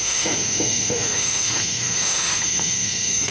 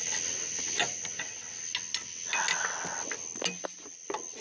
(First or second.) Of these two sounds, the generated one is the first